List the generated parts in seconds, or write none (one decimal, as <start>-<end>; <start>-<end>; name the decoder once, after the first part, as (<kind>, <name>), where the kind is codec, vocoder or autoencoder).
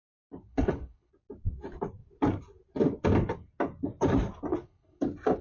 0.5-1.1 (codec, HILCodec); 4.5-5.0